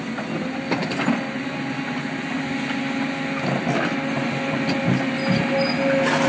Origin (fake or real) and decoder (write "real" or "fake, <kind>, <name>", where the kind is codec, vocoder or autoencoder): real